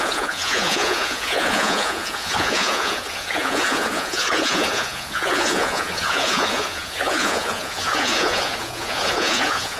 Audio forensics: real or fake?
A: fake